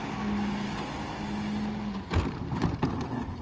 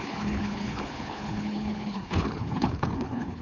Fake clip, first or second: second